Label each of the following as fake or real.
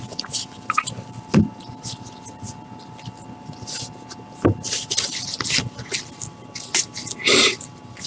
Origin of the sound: real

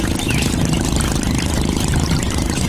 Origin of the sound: fake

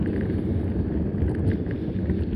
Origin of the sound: real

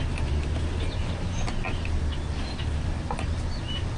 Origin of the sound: real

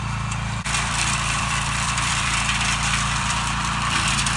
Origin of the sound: fake